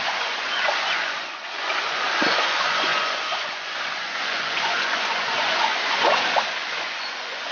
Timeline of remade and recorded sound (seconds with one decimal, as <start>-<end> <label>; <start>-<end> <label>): 0.0-7.5 remade